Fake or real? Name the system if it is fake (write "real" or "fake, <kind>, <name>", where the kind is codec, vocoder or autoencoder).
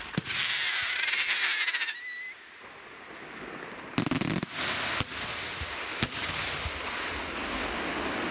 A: real